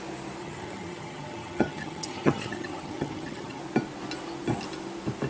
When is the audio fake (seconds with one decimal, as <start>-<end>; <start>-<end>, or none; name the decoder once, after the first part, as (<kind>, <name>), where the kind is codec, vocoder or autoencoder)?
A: 0.4-3.6 (vocoder, HiFi-GAN)